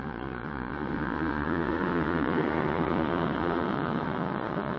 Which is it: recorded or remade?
remade